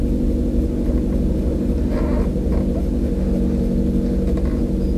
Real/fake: real